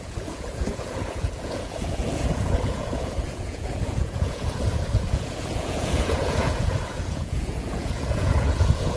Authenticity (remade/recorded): remade